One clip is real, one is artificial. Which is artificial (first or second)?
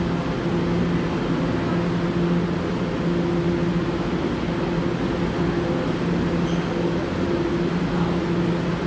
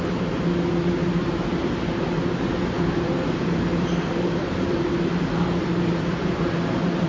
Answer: second